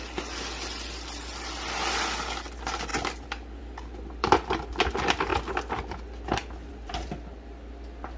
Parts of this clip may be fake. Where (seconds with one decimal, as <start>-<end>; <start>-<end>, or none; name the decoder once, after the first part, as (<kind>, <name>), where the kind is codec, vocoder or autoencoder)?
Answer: none